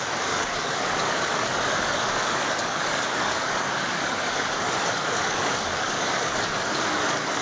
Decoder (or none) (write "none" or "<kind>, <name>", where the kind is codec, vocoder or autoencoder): codec, DAC